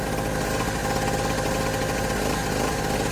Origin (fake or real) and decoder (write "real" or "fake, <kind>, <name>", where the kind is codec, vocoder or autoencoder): real